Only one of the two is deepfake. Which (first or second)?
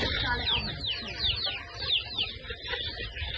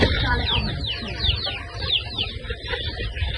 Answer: second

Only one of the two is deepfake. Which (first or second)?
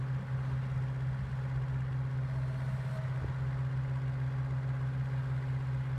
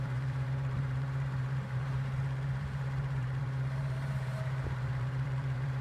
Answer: second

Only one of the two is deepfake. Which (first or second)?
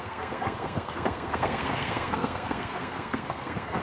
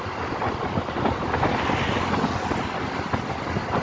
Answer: first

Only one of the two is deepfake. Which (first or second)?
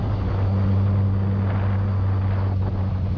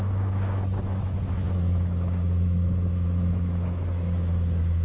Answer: second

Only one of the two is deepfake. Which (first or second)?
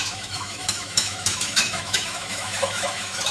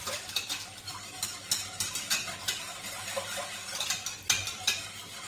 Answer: first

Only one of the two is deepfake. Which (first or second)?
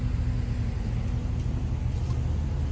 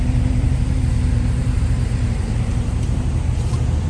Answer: second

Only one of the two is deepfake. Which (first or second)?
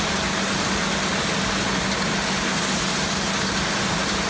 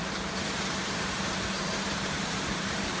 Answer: second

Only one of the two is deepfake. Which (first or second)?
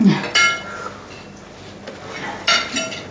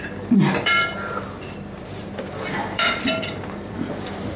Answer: second